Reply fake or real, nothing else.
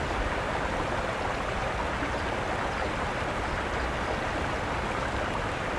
real